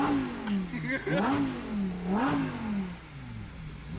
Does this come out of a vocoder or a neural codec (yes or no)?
no